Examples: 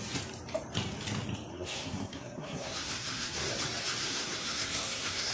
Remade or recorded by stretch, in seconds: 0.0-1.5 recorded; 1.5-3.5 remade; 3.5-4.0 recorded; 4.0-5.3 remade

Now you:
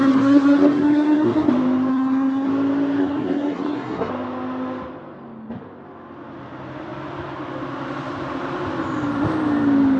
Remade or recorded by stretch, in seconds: 0.0-1.5 remade; 1.5-1.9 recorded; 1.9-2.5 remade; 2.5-3.0 recorded; 3.0-4.1 remade; 4.1-10.0 recorded